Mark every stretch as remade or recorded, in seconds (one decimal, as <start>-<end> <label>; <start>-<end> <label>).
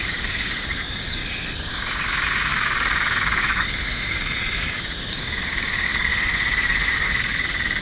0.0-1.2 remade; 1.2-1.7 recorded; 1.7-6.1 remade; 6.1-6.9 recorded; 6.9-7.8 remade